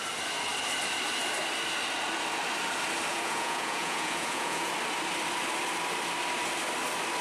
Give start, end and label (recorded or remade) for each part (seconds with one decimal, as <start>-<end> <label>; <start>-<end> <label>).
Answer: 0.0-3.1 recorded; 3.1-4.7 remade; 4.7-7.2 recorded